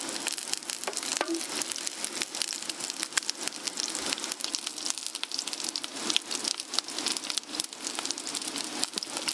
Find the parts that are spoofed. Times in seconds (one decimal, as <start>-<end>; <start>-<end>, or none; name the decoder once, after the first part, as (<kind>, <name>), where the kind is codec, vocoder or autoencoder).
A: none